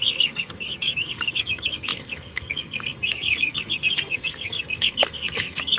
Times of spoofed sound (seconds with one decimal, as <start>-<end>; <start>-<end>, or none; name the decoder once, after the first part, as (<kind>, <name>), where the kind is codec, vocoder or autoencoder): 0.0-5.8 (codec, SNAC)